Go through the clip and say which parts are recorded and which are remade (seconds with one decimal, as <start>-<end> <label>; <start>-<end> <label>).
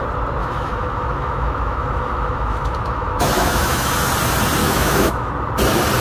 0.0-0.4 recorded; 0.4-3.9 remade; 3.9-4.6 recorded; 4.6-5.3 remade; 5.3-6.0 recorded